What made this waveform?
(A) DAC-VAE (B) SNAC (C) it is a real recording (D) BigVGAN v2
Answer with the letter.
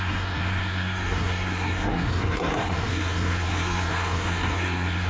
B